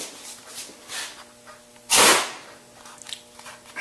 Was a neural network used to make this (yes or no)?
no